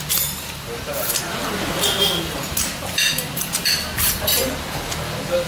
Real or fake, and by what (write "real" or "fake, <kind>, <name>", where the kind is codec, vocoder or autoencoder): real